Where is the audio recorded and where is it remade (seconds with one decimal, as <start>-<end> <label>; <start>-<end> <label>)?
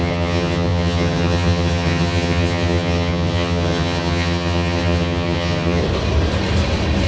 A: 0.0-5.8 remade; 5.8-7.1 recorded